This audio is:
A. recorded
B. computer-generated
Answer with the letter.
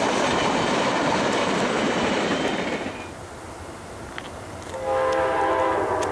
A